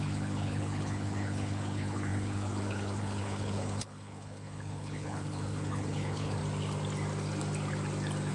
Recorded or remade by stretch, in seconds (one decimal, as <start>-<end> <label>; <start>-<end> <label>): 0.0-6.4 remade; 6.4-8.3 recorded